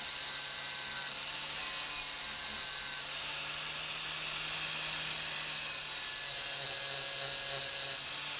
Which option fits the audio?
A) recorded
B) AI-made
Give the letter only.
A